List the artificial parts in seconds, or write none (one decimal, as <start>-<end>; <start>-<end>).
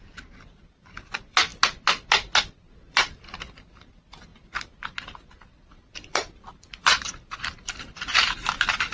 0.0-1.5; 2.4-8.9